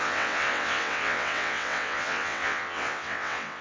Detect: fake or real fake